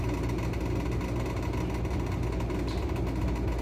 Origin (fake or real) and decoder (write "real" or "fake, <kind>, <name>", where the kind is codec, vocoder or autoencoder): real